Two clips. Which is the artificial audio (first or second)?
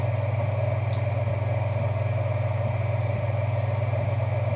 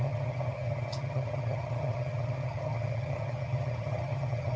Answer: second